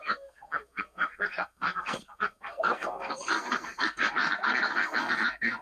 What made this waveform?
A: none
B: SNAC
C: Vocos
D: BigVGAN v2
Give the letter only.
B